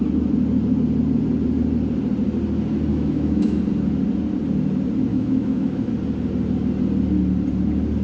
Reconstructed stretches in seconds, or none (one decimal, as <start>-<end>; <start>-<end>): 2.9-3.6; 5.1-5.9